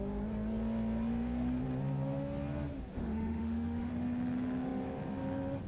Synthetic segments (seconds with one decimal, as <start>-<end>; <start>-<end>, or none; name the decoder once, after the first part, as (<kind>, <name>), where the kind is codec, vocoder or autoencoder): 3.0-3.9 (autoencoder, DAC-VAE)